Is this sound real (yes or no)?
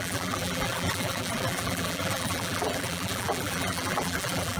no